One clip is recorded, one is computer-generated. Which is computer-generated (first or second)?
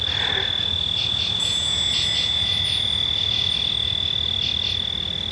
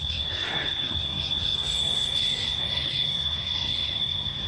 second